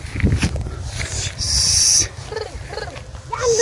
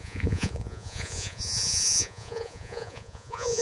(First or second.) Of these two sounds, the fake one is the second